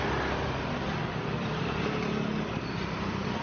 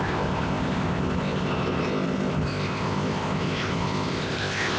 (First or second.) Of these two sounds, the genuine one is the first